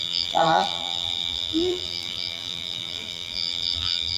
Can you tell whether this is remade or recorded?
remade